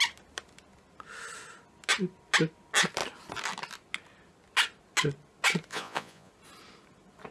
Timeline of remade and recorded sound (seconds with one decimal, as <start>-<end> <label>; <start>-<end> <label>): 0.0-5.7 recorded; 5.7-6.3 remade; 6.3-7.3 recorded